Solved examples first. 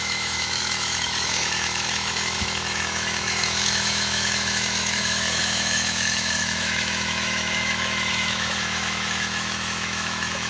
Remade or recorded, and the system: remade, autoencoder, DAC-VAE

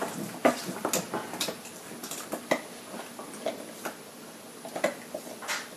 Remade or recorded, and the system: recorded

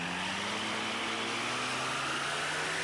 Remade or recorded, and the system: recorded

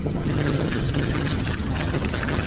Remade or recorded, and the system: remade, vocoder, HiFi-GAN